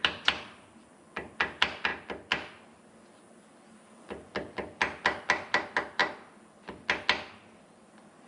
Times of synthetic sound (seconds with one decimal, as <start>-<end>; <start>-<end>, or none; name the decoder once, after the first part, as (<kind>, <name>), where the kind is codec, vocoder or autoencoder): none